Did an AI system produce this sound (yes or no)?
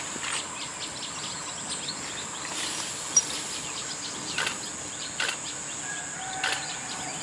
no